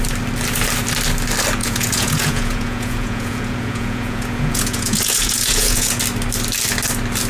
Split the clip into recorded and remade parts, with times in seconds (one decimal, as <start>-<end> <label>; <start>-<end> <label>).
0.0-1.6 recorded; 1.6-6.0 remade; 6.0-7.3 recorded